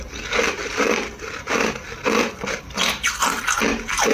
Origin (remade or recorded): recorded